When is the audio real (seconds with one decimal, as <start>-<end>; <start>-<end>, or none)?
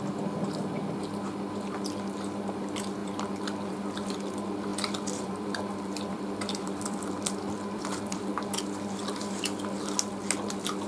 0.0-3.0; 3.7-4.7; 8.3-10.9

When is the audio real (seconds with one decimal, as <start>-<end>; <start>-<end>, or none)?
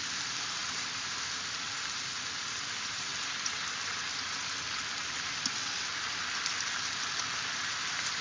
none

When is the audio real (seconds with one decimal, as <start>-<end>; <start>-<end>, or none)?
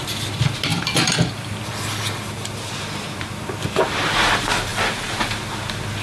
0.0-0.7; 1.6-4.7; 5.3-6.0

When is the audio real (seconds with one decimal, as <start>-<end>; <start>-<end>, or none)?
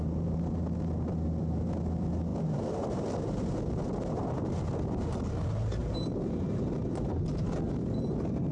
0.0-5.8; 6.3-8.5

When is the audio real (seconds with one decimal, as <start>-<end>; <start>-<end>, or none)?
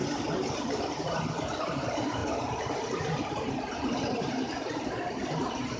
0.0-0.6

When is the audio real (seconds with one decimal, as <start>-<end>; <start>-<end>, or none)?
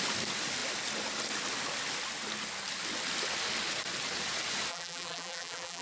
0.0-4.7